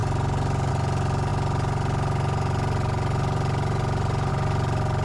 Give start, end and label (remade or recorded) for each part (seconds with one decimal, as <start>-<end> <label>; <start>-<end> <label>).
0.0-5.0 recorded